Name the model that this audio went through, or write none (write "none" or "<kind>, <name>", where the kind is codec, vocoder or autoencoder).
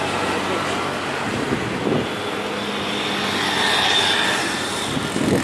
none